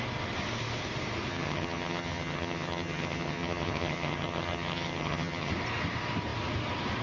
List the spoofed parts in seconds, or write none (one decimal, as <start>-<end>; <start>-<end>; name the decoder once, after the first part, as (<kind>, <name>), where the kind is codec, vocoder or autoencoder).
1.3-5.5 (vocoder, HiFi-GAN)